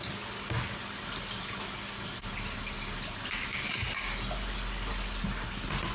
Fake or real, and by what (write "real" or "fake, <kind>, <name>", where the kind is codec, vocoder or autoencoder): real